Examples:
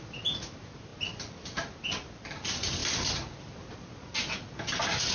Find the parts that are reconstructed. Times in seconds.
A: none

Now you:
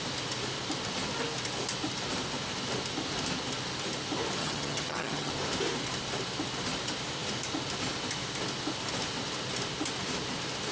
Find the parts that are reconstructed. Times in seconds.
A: 4.4-5.3 (vocoder, HiFi-GAN)

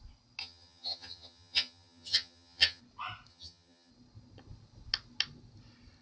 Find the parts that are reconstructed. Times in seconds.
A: 0.4-2.8 (vocoder, HiFi-GAN); 3.3-3.9

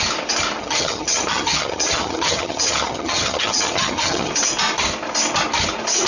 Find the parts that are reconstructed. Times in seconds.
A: 0.6-4.3 (vocoder, HiFi-GAN)

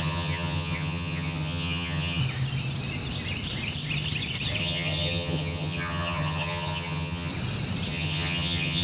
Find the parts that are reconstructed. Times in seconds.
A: 0.0-2.2 (vocoder, HiFi-GAN); 4.6-7.3; 7.9-8.8

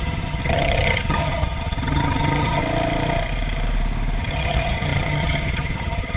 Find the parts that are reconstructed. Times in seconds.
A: 0.0-2.6 (vocoder, HiFi-GAN); 4.2-6.2